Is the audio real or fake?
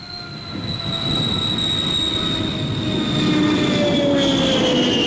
real